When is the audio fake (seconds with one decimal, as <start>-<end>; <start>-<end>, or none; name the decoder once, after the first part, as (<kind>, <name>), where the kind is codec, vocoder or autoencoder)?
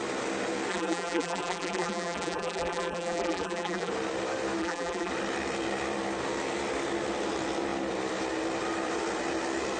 0.7-3.9 (vocoder, BigVGAN v2); 4.6-5.1